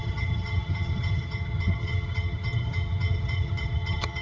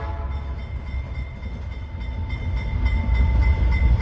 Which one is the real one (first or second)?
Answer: second